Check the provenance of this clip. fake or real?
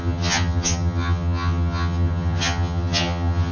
fake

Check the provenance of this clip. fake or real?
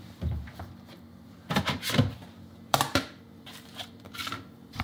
fake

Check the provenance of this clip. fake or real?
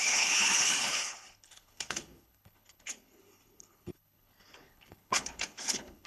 fake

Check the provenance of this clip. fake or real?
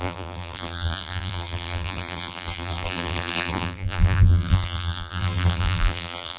fake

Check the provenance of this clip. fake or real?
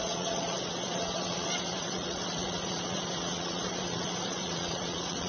fake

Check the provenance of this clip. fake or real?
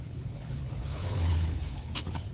fake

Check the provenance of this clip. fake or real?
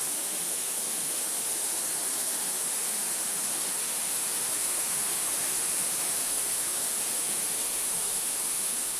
fake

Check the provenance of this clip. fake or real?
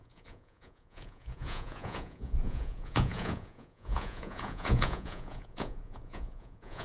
fake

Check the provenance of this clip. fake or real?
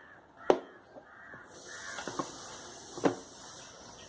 real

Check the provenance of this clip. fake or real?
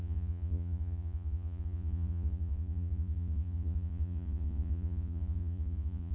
fake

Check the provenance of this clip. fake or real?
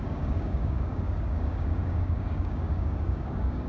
fake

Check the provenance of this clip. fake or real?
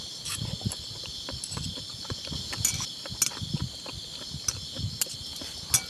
real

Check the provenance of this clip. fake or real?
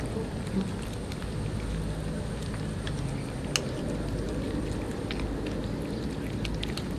real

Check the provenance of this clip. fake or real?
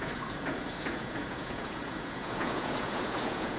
fake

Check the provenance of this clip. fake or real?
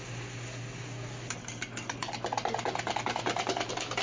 real